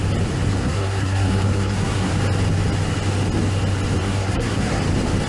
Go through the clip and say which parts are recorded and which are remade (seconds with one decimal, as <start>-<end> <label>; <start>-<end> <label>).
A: 0.0-0.5 recorded; 0.5-2.1 remade; 2.1-4.0 recorded; 4.0-4.8 remade; 4.8-5.3 recorded